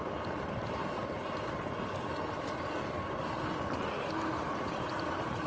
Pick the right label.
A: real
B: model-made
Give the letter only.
A